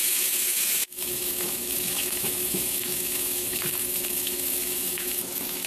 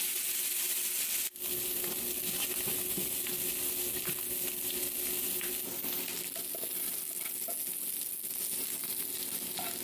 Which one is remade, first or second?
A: first